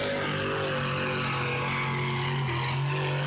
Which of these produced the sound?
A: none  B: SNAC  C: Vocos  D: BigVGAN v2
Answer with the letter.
A